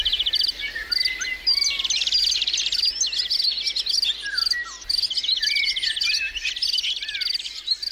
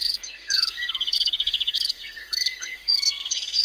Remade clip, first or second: second